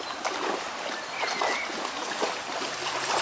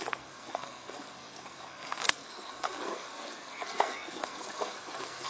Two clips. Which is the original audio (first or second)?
first